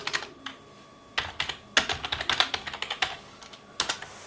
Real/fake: real